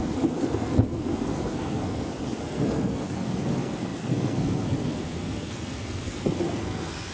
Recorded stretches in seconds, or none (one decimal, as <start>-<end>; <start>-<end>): none